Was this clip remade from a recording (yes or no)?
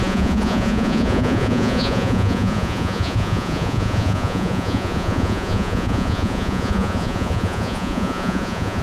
yes